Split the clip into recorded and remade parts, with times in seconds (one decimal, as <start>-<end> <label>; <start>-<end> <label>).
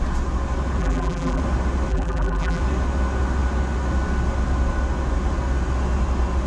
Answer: 0.0-0.8 recorded; 0.8-1.4 remade; 1.4-1.9 recorded; 1.9-2.6 remade; 2.6-6.5 recorded